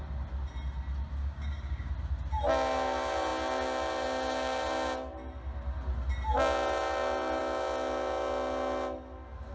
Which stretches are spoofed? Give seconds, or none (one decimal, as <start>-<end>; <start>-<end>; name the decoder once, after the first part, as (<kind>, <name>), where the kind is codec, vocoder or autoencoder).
1.2-1.9 (codec, DAC)